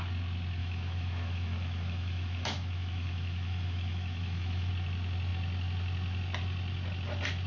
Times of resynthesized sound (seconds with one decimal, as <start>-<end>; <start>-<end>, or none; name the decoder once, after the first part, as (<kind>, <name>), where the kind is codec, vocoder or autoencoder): 0.6-4.7 (autoencoder, DAC-VAE)